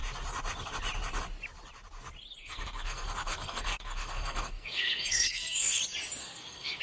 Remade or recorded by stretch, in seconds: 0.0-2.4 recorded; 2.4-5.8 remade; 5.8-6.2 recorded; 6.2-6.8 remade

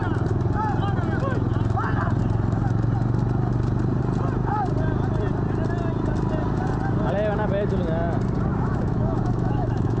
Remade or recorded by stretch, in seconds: 0.0-8.5 recorded; 8.5-10.0 remade

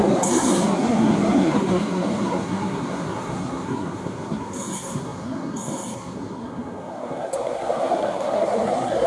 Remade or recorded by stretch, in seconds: 0.0-9.1 remade

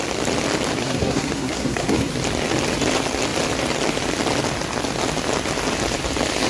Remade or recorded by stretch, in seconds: 0.0-0.8 recorded; 0.8-2.1 remade; 2.1-6.5 recorded

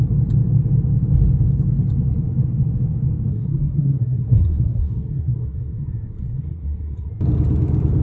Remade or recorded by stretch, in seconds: 0.0-3.3 recorded; 3.3-7.1 remade; 7.1-8.0 recorded

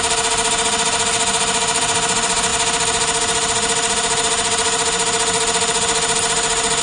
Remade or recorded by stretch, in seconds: 0.0-6.8 recorded

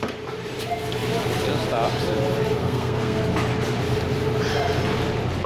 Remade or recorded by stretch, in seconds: 0.0-2.6 recorded; 2.6-3.2 remade; 3.2-5.5 recorded